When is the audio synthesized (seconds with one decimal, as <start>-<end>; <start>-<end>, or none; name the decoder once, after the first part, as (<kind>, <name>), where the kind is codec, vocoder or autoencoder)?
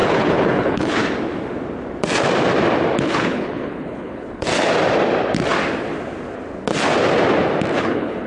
0.0-1.0 (codec, HILCodec); 3.0-4.5; 7.8-8.3